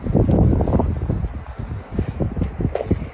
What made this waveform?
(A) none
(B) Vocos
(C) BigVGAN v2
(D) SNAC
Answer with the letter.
A